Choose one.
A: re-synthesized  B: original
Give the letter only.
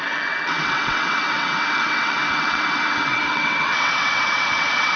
A